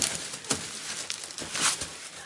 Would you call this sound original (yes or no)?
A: yes